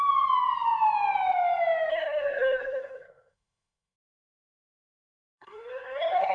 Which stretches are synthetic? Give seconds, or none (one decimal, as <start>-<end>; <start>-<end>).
1.9-6.3